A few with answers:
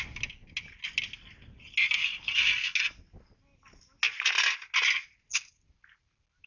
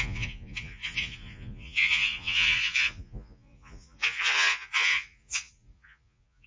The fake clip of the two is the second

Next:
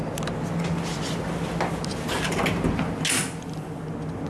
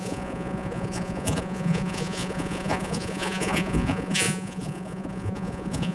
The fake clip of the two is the second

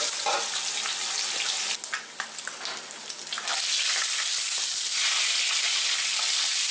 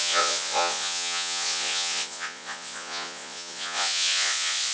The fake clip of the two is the second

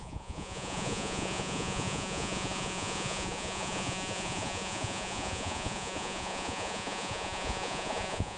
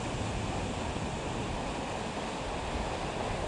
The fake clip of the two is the first